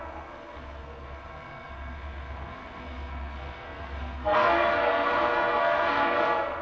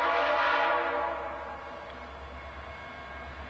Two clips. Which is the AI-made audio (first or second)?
first